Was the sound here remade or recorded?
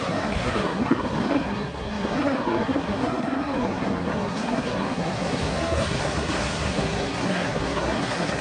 remade